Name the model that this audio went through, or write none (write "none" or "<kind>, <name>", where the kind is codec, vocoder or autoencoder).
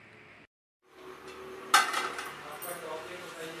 none